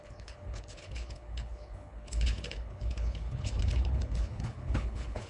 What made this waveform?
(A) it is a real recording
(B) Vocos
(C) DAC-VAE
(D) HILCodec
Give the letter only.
D